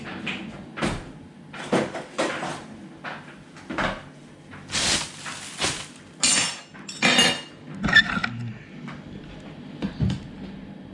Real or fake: real